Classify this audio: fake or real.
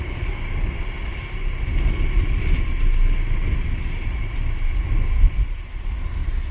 real